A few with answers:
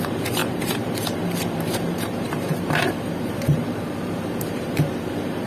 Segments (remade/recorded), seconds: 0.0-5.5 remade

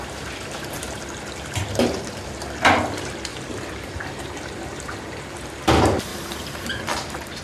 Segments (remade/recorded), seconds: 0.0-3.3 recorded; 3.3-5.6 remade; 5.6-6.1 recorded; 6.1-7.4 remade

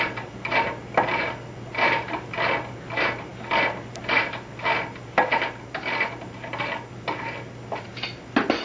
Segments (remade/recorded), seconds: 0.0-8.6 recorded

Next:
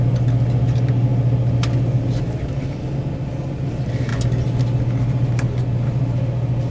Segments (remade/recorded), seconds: 0.0-6.7 recorded

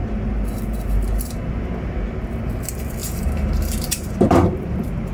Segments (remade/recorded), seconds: 0.0-1.6 remade; 1.6-3.0 recorded; 3.0-5.1 remade